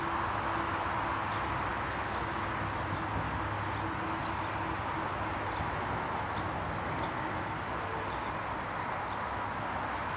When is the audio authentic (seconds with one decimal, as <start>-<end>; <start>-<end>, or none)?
0.0-1.7; 2.4-10.2